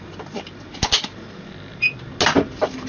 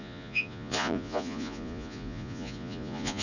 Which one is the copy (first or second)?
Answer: second